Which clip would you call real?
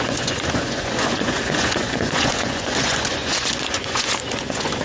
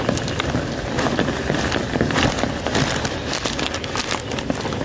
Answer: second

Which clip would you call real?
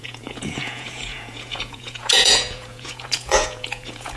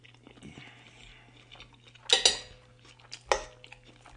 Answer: second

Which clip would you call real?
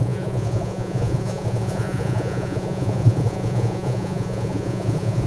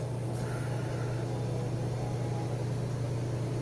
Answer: second